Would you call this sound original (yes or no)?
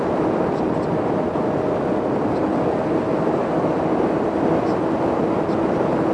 yes